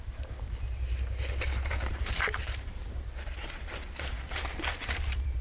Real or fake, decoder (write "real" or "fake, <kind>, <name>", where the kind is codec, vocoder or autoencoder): fake, vocoder, BigVGAN v2